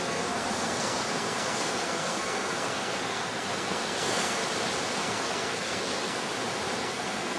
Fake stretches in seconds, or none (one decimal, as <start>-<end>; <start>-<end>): 0.0-4.4; 4.9-6.3; 6.8-7.4

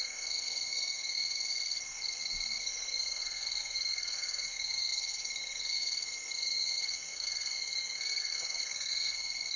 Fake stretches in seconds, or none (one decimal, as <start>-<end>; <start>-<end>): 0.0-9.6

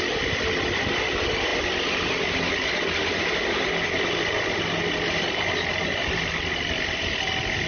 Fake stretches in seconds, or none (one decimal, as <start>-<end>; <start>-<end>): none

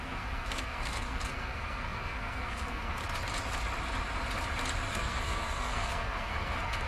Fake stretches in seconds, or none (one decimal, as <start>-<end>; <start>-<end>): 0.0-3.0; 4.9-6.9

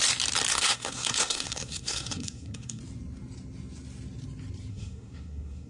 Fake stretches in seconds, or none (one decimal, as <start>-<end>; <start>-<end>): 0.5-2.8; 4.7-5.7